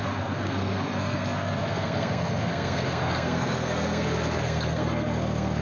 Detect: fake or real fake